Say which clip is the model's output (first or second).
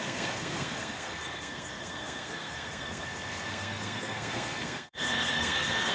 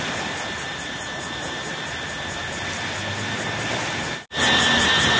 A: first